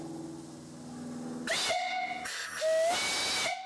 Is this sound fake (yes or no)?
no